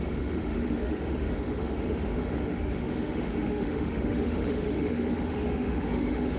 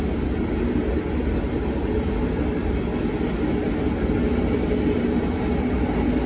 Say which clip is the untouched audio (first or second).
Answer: second